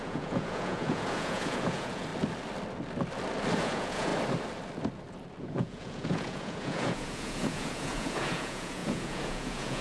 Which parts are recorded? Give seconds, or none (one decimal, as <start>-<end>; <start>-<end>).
2.1-3.6; 4.1-5.4